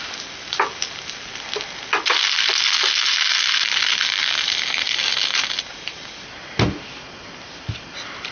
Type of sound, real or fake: real